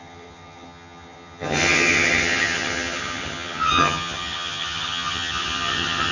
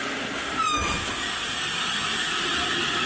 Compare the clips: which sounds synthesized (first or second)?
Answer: first